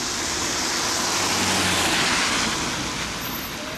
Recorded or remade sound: recorded